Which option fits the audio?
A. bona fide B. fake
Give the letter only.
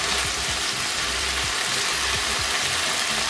A